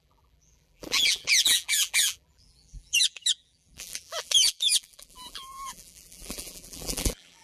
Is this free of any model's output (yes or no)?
no